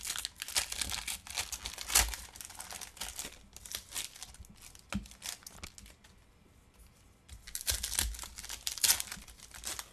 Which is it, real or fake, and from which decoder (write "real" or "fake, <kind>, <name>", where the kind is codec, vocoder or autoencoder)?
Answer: real